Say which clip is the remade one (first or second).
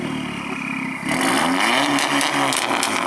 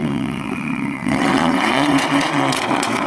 second